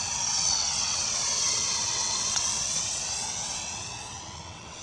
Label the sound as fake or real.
fake